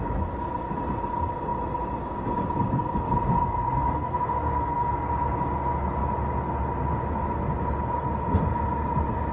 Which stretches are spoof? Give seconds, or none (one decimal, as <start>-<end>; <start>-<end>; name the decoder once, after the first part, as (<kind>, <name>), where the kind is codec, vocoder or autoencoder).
none